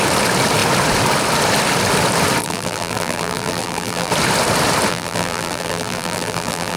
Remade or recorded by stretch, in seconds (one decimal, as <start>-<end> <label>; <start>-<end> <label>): 0.0-2.4 recorded; 2.4-4.1 remade; 4.1-4.9 recorded; 4.9-6.8 remade